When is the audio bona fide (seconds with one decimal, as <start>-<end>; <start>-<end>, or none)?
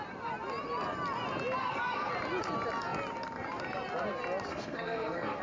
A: 0.0-1.6; 2.1-4.5